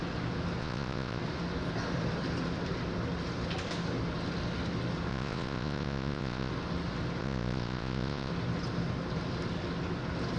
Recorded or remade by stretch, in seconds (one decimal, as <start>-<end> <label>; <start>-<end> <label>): 0.0-0.6 recorded; 0.6-1.2 remade; 1.2-5.1 recorded; 5.1-6.5 remade; 6.5-7.2 recorded; 7.2-8.3 remade; 8.3-10.4 recorded